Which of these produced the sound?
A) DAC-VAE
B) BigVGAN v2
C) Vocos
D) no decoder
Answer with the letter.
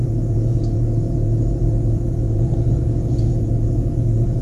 C